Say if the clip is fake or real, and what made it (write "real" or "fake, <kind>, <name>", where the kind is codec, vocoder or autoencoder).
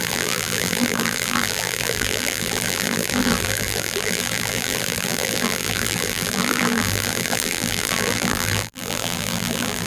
fake, vocoder, BigVGAN v2